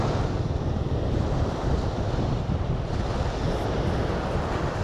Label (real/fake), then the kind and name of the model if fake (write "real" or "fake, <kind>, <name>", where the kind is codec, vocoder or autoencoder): real